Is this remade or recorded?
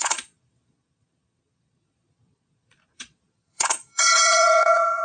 remade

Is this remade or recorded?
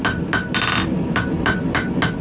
recorded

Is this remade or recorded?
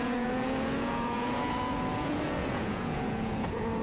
remade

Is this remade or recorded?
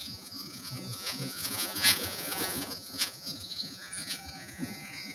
remade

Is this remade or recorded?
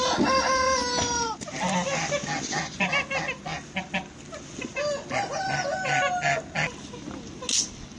recorded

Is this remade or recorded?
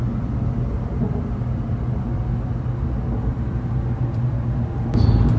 recorded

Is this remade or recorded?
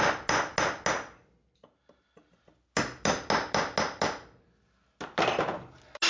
recorded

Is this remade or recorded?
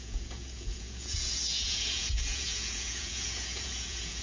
remade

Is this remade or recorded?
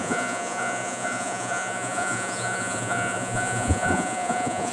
remade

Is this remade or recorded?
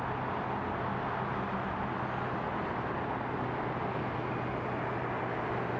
recorded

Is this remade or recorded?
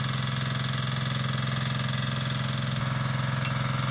recorded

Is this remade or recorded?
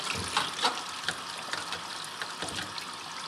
recorded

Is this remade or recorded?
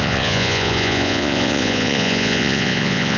remade